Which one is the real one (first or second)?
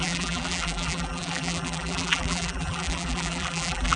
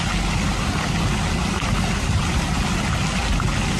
second